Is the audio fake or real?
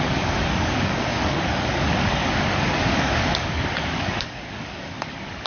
fake